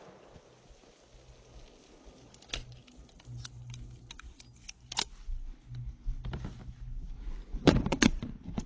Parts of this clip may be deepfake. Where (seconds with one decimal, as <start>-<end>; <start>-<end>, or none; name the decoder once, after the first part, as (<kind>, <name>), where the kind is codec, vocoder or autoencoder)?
7.5-8.7 (vocoder, Vocos)